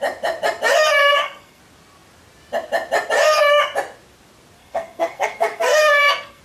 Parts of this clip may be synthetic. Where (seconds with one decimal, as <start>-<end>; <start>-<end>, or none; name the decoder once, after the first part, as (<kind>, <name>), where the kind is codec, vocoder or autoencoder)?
1.0-1.6 (codec, SNAC); 4.6-6.4